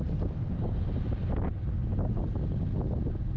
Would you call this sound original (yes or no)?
yes